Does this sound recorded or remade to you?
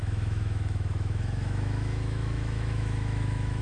remade